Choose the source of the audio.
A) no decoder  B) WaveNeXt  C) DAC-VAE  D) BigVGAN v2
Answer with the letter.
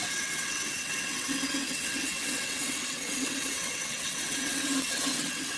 B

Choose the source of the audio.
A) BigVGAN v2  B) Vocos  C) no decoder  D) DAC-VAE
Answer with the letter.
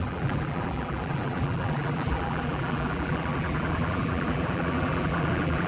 A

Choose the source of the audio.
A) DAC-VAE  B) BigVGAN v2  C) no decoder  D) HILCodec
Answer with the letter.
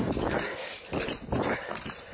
C